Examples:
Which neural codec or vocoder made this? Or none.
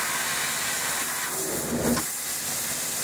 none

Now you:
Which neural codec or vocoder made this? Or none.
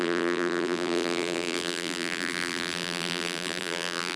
vocoder, BigVGAN v2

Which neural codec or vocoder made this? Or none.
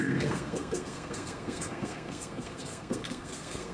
codec, SNAC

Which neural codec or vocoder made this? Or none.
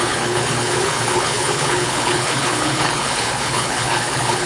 codec, HILCodec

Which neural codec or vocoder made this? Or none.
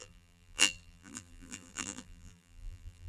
vocoder, BigVGAN v2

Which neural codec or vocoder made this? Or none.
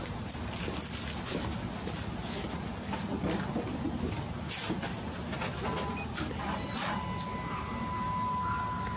none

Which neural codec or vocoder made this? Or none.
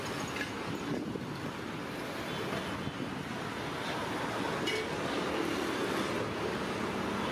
none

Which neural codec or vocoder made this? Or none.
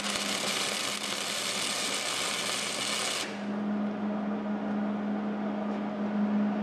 none